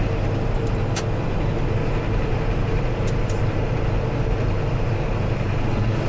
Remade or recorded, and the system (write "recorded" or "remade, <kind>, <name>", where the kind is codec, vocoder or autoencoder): recorded